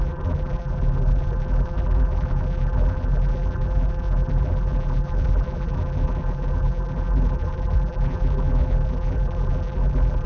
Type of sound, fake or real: fake